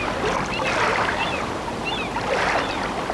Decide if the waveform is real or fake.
real